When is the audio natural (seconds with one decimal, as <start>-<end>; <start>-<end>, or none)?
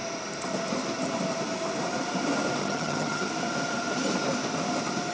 0.0-2.6; 3.3-5.1